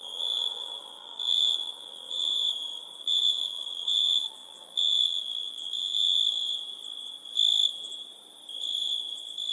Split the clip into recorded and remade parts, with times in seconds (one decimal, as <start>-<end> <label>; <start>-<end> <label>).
0.0-2.3 remade; 2.3-3.0 recorded; 3.0-6.2 remade; 6.2-9.5 recorded